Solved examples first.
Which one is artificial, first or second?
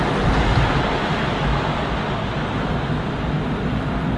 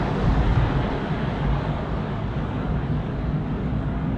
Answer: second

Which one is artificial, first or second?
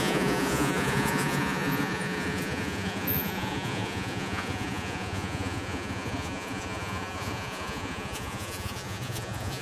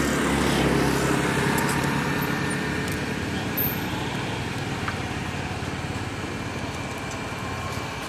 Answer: first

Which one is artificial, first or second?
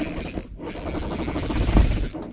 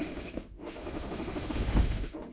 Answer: second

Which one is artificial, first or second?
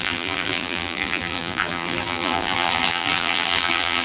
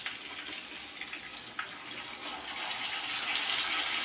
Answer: first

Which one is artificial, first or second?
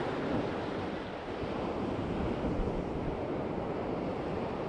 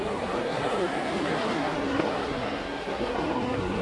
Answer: second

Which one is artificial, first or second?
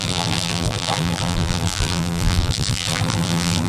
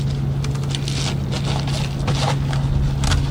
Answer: first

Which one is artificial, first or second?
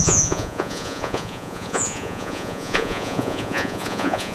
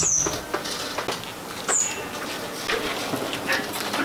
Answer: first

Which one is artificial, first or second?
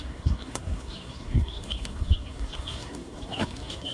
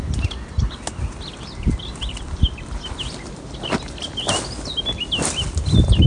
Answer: first